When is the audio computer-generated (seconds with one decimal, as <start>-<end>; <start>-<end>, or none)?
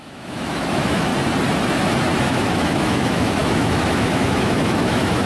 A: 0.0-1.1; 2.2-5.3